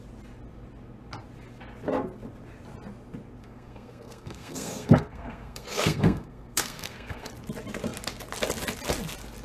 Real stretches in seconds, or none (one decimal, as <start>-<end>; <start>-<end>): 0.0-3.4; 7.3-9.4